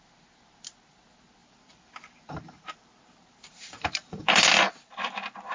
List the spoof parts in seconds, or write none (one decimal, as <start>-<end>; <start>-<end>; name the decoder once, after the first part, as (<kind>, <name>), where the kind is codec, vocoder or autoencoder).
1.4-4.6 (vocoder, BigVGAN v2)